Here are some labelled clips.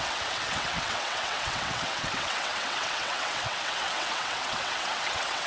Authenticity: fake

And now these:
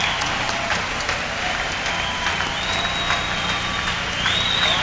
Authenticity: real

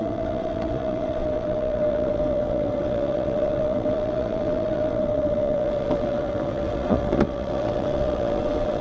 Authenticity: fake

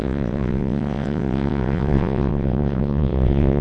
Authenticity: fake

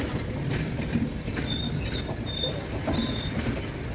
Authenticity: real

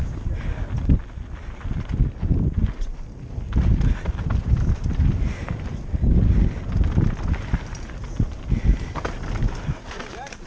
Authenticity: real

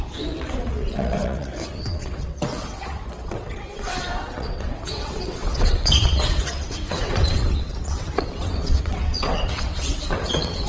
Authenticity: fake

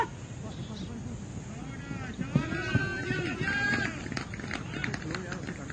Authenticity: real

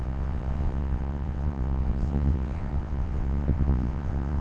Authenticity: fake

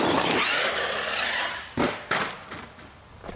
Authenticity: real